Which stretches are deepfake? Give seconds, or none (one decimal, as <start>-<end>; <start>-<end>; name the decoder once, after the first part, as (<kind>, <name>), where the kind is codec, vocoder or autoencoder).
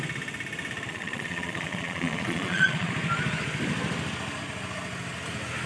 0.9-2.9 (vocoder, Vocos)